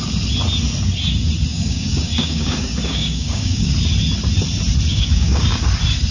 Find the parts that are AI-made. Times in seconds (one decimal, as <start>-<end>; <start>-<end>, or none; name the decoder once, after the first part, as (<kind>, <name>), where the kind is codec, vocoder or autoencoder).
1.5-3.7 (codec, DAC); 4.9-5.6